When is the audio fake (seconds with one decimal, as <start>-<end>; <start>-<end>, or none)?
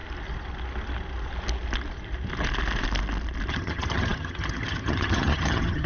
3.5-5.9